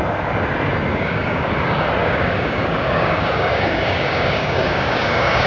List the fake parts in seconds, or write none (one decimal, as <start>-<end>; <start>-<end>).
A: 0.9-1.5; 2.0-5.5